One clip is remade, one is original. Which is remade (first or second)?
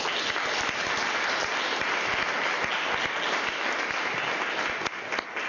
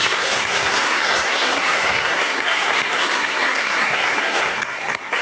second